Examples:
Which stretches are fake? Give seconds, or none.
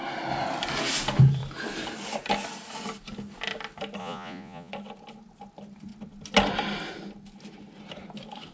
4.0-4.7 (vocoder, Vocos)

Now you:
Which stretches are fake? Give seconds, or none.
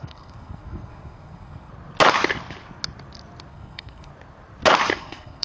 0.0-1.7 (codec, SNAC); 3.5-4.1; 4.9-5.4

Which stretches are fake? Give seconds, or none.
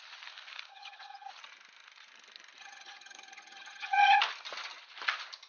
0.7-1.3 (vocoder, HiFi-GAN); 2.6-4.2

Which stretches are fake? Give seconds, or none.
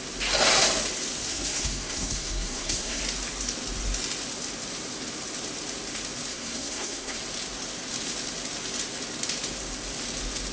1.3-3.0 (codec, SNAC); 6.3-7.2